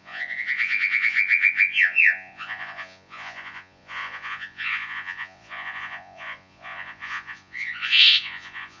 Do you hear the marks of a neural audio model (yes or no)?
yes